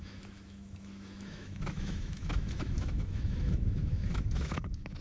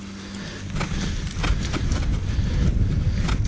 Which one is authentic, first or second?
second